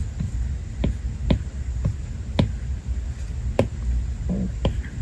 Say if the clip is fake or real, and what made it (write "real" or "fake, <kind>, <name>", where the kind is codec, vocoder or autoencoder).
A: real